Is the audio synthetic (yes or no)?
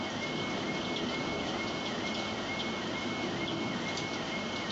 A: no